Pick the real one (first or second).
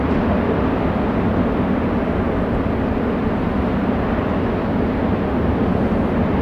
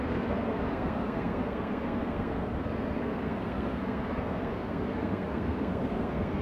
first